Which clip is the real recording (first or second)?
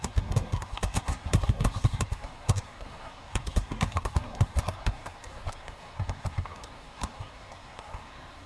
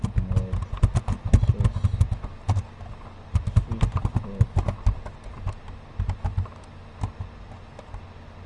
second